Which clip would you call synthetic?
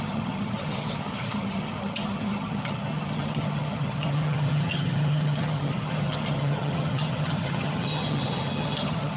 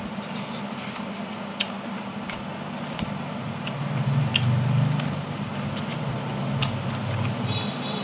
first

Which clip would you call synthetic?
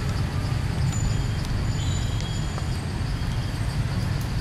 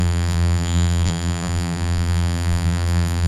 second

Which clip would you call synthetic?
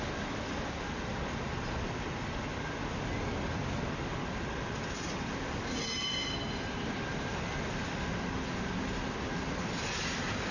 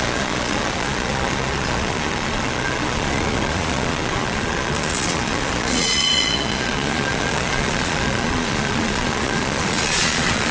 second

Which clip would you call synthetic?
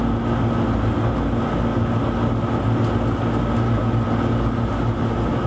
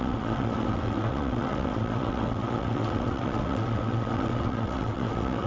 second